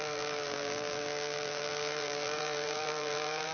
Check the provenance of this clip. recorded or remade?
remade